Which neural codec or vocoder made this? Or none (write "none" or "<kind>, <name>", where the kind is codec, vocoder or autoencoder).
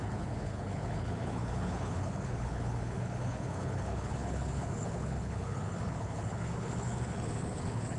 codec, HILCodec